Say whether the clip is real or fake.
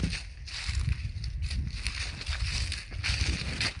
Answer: real